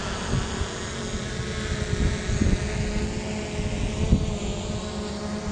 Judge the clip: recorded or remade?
recorded